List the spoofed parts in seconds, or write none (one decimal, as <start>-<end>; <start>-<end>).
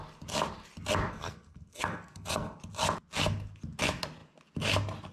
1.1-2.6